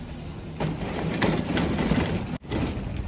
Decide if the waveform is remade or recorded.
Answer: recorded